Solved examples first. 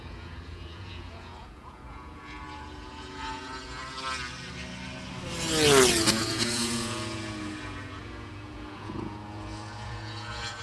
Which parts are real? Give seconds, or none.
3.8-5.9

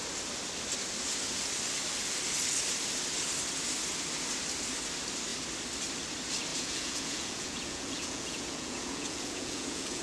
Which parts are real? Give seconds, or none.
0.0-6.5

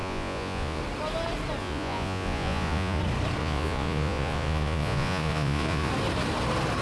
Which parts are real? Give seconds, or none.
0.8-1.6; 3.0-3.4; 5.9-6.8

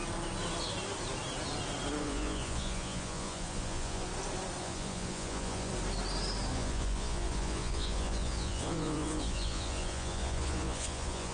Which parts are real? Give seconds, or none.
0.0-2.0; 4.1-4.6; 5.7-6.5

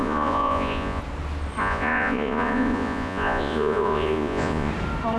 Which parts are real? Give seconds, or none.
1.0-1.6; 4.7-5.2

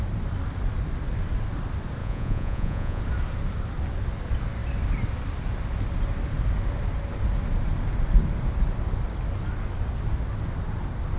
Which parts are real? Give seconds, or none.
0.0-2.0; 3.0-11.2